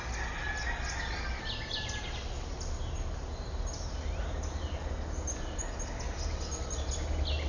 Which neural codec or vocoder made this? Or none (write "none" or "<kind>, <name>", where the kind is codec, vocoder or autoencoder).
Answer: none